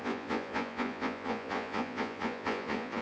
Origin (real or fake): fake